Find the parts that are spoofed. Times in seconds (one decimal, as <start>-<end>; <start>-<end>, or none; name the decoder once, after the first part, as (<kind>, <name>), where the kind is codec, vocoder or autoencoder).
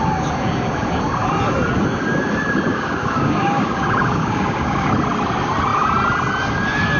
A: 2.7-4.9 (codec, DAC)